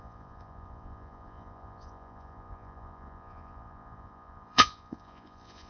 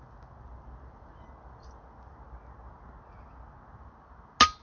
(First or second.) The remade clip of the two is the first